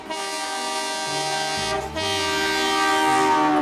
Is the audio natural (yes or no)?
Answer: yes